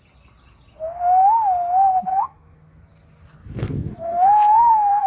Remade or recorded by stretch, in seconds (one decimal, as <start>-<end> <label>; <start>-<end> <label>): 0.0-2.1 recorded; 2.1-2.8 remade; 2.8-3.4 recorded; 3.4-5.1 remade